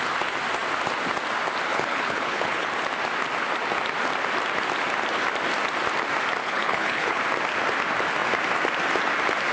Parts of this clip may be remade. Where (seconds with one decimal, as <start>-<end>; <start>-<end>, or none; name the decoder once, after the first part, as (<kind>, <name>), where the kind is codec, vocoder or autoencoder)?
1.7-2.7 (codec, HILCodec); 6.4-7.2